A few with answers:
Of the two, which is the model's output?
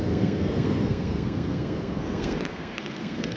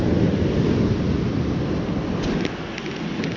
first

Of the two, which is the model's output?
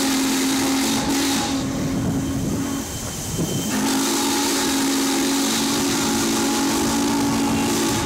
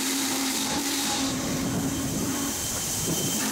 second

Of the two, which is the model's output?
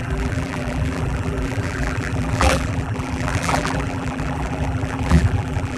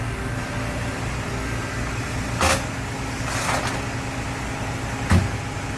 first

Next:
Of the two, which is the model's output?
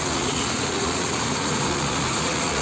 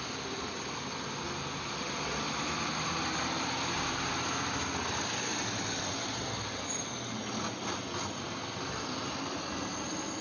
first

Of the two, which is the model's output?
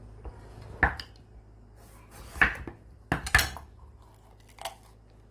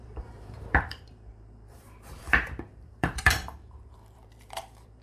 second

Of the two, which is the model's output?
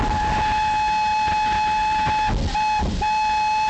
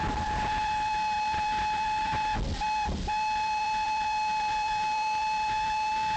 second